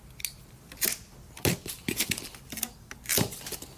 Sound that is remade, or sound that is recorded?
recorded